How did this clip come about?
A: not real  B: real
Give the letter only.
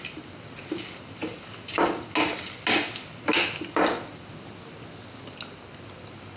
B